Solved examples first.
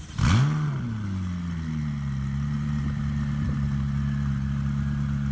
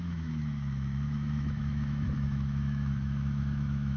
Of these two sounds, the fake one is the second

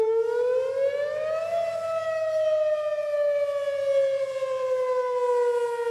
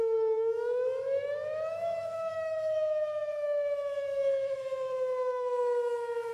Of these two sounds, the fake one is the second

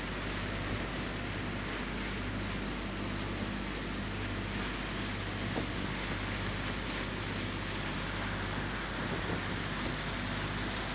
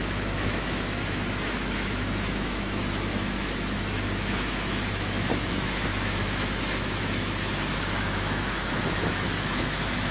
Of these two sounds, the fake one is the second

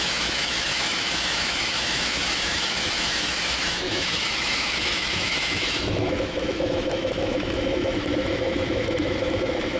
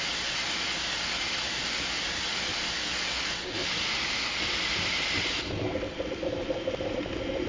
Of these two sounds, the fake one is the first